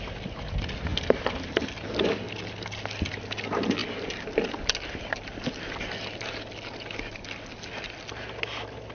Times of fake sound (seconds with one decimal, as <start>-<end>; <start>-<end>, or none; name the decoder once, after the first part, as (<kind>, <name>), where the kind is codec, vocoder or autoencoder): none